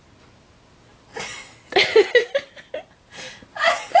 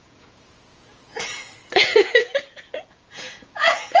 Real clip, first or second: first